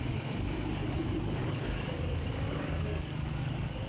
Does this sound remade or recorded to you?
remade